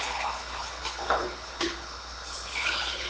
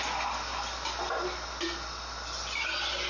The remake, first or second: first